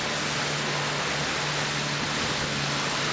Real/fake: real